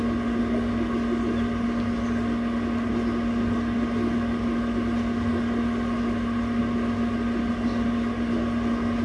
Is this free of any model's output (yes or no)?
yes